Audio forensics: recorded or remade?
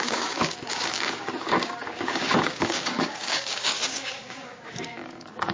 remade